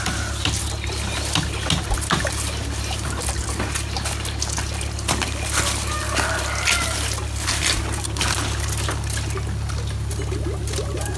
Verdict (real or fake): real